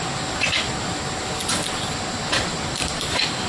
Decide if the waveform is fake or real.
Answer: real